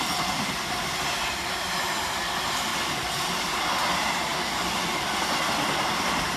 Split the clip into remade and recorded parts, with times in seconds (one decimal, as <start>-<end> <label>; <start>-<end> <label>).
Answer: 0.0-2.7 recorded; 2.7-3.4 remade; 3.4-6.4 recorded